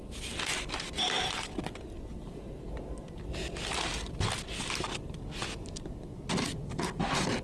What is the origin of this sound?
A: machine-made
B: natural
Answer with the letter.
B